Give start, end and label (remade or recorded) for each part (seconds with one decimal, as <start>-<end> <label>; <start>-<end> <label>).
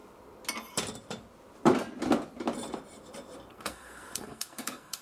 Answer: 0.0-3.5 recorded; 3.5-5.0 remade